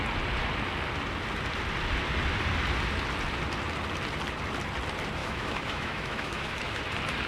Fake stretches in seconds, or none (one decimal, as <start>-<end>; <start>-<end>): 5.2-6.8